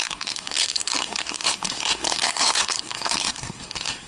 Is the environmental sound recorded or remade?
remade